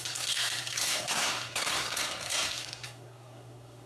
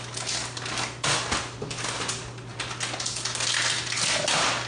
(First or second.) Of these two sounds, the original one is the second